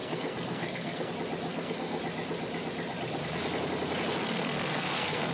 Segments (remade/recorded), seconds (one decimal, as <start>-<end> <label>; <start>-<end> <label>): 0.0-1.1 remade; 1.1-1.5 recorded; 1.5-2.0 remade; 2.0-4.2 recorded; 4.2-5.3 remade